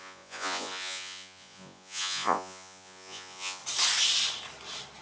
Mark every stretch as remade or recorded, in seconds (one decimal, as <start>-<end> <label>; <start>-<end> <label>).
0.0-3.6 remade; 3.6-5.0 recorded